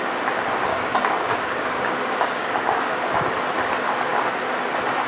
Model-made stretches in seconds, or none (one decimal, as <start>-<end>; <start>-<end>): 0.7-3.0